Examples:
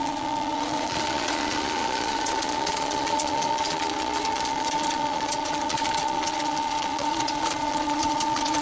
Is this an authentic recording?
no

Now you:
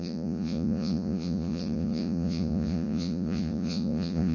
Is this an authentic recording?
no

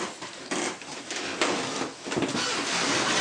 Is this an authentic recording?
yes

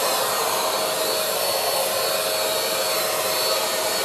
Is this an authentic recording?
yes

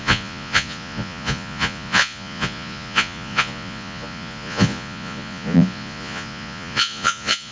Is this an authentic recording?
no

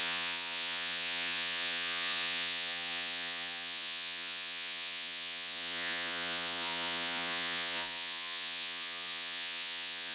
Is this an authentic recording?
no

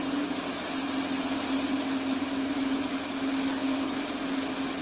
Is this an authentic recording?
yes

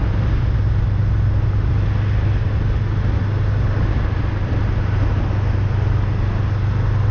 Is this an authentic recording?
yes